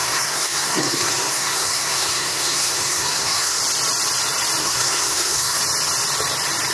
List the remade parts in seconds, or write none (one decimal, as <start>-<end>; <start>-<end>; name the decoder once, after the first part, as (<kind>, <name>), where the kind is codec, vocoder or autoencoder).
0.0-3.6 (codec, SNAC); 4.6-5.6